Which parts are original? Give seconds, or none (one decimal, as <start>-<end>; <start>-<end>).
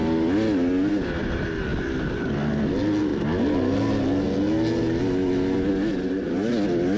0.0-7.0